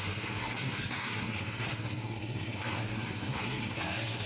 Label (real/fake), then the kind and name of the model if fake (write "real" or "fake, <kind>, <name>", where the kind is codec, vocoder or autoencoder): fake, codec, SNAC